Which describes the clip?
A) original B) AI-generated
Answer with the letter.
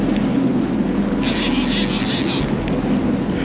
A